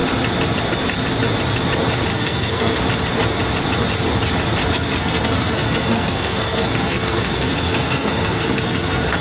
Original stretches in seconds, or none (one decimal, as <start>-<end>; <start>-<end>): 0.0-2.1; 2.8-4.6